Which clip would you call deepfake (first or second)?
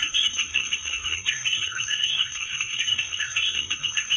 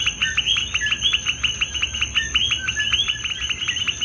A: first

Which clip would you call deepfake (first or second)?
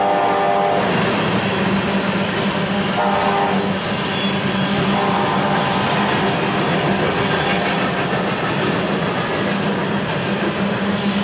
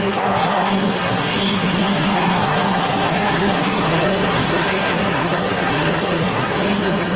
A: second